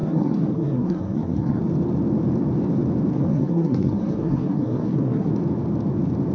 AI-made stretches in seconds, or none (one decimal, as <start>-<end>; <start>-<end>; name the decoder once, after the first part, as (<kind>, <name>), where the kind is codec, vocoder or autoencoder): 0.0-1.6 (codec, SNAC); 3.1-5.3